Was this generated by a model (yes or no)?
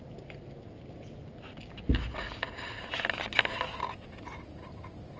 no